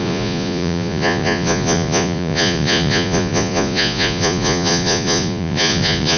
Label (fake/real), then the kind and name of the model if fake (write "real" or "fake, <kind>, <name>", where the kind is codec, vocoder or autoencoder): fake, vocoder, Vocos